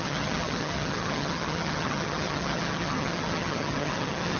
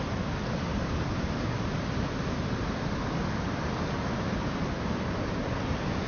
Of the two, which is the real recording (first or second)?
second